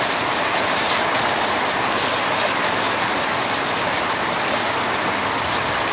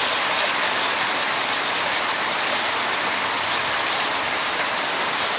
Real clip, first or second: first